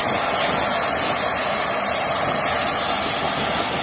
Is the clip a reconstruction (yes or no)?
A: no